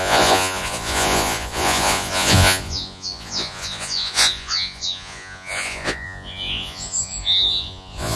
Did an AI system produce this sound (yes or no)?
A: yes